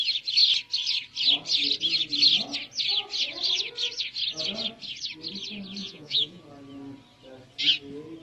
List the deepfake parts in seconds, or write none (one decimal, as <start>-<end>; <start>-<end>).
5.8-6.4